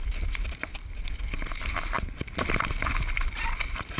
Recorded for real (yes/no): yes